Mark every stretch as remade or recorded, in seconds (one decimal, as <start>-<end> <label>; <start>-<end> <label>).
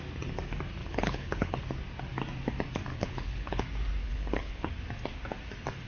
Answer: 0.0-0.8 recorded; 0.8-1.6 remade; 1.6-2.9 recorded; 2.9-3.6 remade; 3.6-4.0 recorded; 4.0-4.7 remade; 4.7-5.9 recorded